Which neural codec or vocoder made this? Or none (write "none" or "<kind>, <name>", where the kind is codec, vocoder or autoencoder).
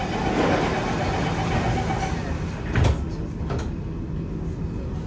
none